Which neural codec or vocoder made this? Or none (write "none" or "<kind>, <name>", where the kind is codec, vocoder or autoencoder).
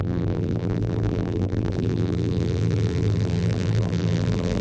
vocoder, BigVGAN v2